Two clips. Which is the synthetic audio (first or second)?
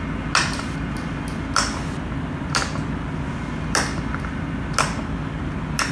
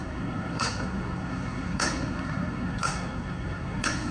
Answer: second